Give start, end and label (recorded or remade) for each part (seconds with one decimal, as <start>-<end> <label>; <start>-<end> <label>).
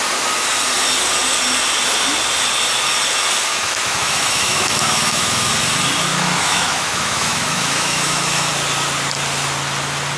0.0-3.5 recorded; 3.5-5.5 remade; 5.5-6.1 recorded; 6.1-8.5 remade; 8.5-10.2 recorded